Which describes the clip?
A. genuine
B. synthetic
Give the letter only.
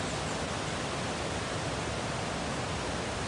A